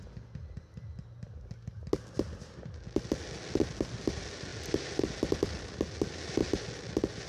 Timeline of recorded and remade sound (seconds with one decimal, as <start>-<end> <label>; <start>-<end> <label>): 0.0-7.3 recorded